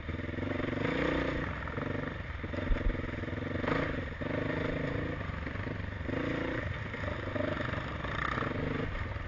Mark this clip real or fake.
real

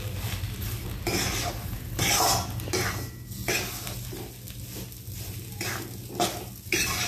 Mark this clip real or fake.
real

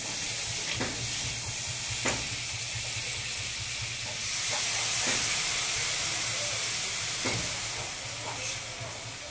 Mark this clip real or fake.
real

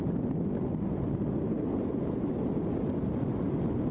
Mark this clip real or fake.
real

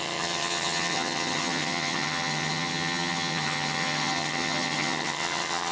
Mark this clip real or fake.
fake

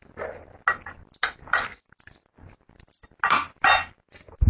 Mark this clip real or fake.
real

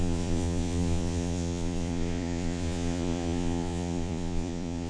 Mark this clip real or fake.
fake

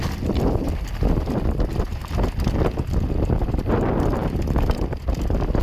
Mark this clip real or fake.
real